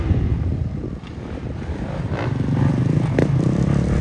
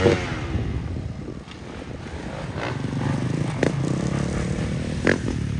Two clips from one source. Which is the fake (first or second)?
first